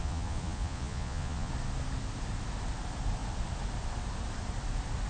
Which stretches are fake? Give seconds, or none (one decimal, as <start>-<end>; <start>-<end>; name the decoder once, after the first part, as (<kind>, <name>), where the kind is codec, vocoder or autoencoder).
0.0-1.5 (vocoder, Vocos)

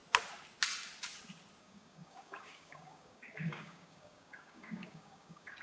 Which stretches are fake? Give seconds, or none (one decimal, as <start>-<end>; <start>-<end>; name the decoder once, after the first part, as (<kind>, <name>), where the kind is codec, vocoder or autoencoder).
1.6-5.6 (codec, DAC)

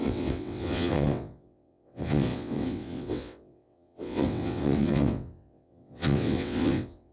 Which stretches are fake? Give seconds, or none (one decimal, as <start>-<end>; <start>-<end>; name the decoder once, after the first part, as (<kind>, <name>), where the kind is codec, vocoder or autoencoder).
0.0-7.1 (vocoder, WaveNeXt)

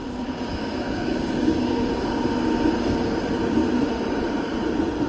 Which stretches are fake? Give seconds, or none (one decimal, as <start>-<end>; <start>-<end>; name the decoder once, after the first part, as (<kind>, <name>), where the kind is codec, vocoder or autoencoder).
0.0-1.9 (codec, DAC)

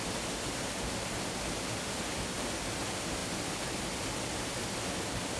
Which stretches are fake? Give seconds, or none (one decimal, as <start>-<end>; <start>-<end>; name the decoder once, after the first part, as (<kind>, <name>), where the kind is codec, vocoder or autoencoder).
none

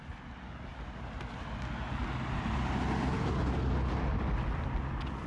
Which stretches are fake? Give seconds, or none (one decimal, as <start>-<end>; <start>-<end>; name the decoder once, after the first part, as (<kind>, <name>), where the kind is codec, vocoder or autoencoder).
none